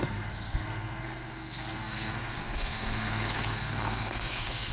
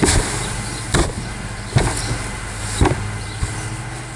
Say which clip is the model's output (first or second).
first